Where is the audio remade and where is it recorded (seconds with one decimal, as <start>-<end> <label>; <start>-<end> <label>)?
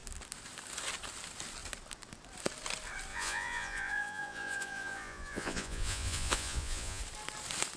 0.0-3.1 recorded; 3.1-7.0 remade; 7.0-7.8 recorded